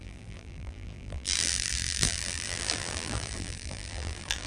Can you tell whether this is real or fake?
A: fake